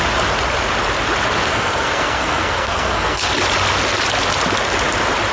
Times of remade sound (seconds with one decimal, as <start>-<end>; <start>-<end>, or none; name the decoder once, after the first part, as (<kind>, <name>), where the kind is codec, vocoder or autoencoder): 1.5-3.3 (codec, SNAC)